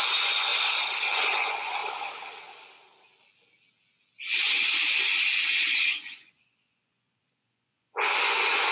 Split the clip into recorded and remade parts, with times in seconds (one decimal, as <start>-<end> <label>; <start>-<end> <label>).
0.0-0.5 remade; 0.5-1.1 recorded; 1.1-1.8 remade; 1.8-5.8 recorded; 5.8-8.7 remade